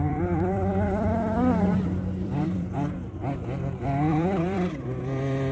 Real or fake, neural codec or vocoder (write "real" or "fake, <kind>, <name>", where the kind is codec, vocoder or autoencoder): fake, vocoder, BigVGAN v2